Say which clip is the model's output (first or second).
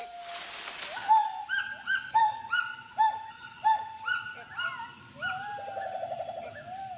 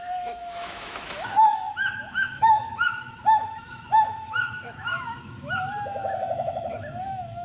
second